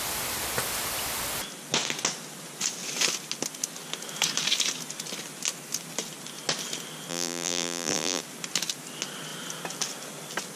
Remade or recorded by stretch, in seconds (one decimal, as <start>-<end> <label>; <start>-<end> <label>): 0.0-7.1 recorded; 7.1-8.2 remade; 8.2-10.6 recorded